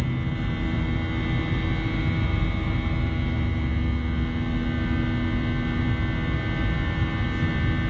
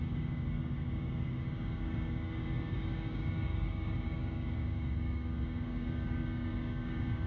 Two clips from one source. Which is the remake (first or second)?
second